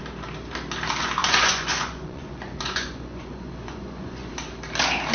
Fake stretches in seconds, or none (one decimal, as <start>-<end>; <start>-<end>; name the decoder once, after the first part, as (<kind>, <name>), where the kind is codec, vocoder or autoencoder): 1.2-4.3 (vocoder, Vocos)